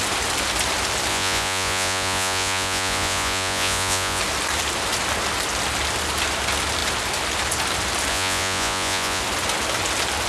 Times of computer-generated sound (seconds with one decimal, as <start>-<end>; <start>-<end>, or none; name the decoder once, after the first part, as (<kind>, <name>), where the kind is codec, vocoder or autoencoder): 1.1-4.2 (vocoder, Vocos); 8.1-9.2